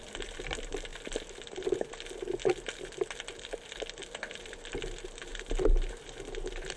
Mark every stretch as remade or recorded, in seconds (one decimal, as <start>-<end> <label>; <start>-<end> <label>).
0.0-0.9 recorded; 0.9-1.7 remade; 1.7-6.8 recorded